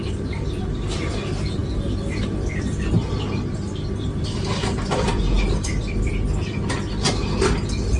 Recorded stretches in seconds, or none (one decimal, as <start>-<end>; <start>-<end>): 0.0-4.7; 6.1-8.0